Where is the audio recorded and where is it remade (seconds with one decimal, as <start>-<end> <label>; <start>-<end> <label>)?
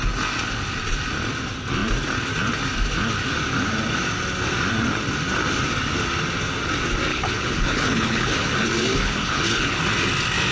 0.0-7.1 recorded; 7.1-8.5 remade; 8.5-8.9 recorded; 8.9-9.8 remade; 9.8-10.5 recorded